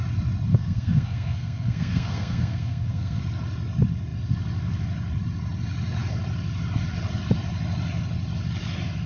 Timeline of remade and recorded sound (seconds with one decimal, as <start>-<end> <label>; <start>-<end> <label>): 0.0-0.5 recorded; 0.5-3.2 remade; 3.2-9.1 recorded